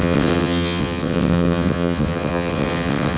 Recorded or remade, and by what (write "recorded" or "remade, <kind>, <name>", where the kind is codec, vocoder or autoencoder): remade, vocoder, WaveNeXt